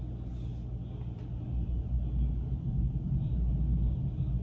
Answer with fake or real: real